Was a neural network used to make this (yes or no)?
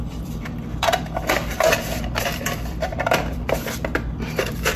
yes